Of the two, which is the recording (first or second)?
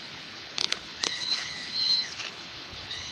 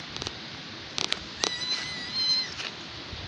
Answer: second